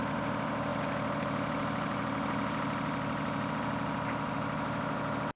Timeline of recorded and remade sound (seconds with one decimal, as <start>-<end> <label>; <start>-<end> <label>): 0.0-5.4 recorded